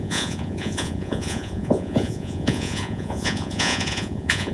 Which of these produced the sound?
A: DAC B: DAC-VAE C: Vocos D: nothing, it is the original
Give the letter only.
C